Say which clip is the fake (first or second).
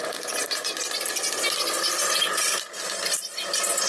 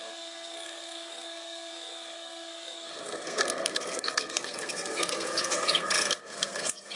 second